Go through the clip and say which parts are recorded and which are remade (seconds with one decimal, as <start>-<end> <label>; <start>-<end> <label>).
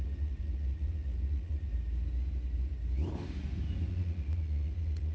0.0-1.7 remade; 1.7-3.9 recorded; 3.9-5.1 remade